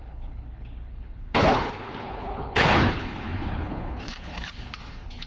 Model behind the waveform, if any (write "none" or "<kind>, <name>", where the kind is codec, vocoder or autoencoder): codec, HILCodec